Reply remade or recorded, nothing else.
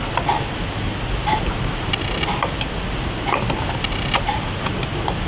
recorded